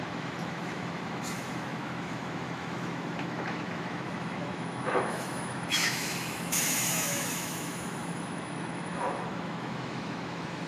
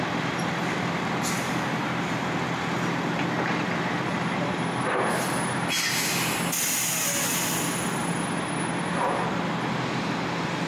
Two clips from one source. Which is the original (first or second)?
second